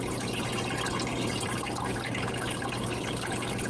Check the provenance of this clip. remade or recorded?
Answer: recorded